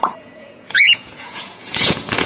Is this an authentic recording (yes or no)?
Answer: no